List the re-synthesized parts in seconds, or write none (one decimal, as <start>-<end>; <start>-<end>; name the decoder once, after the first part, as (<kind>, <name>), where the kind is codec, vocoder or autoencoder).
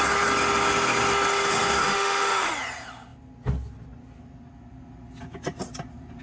1.8-2.5 (autoencoder, DAC-VAE)